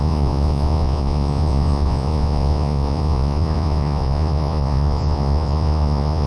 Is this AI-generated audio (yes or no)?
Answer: yes